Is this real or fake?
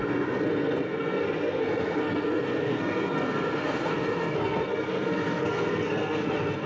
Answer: fake